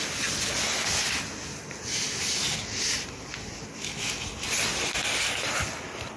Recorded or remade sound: recorded